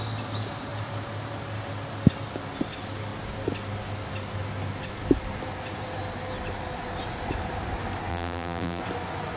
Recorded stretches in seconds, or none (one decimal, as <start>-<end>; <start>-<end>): 0.0-8.1; 8.8-9.4